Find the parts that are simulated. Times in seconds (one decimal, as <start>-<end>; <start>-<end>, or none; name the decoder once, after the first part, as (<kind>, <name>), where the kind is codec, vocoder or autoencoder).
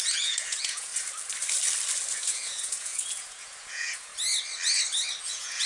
0.0-0.9 (vocoder, Vocos); 2.1-4.1; 5.2-5.7